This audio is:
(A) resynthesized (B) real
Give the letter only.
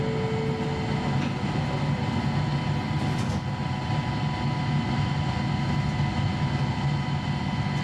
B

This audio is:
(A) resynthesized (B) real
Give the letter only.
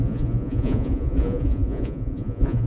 A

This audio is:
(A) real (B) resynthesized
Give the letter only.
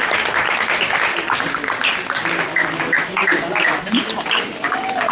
A